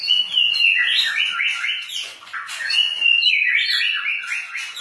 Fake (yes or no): yes